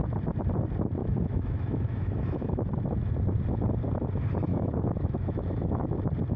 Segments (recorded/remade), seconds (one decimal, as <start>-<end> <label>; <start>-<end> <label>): 0.0-1.0 recorded; 1.0-2.7 remade; 2.7-4.5 recorded; 4.5-6.0 remade; 6.0-6.4 recorded